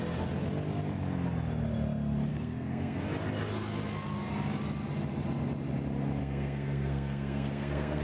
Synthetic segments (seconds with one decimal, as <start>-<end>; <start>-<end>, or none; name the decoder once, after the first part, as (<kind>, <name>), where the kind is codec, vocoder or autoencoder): 2.3-3.0 (codec, SNAC); 6.2-8.0